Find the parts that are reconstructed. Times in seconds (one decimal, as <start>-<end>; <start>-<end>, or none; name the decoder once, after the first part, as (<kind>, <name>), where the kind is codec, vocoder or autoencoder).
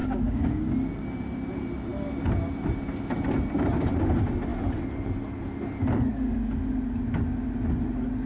0.0-0.7 (codec, DAC)